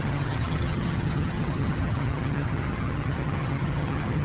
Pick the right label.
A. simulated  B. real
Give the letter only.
A